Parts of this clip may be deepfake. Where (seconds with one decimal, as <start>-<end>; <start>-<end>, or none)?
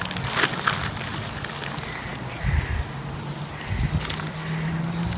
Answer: none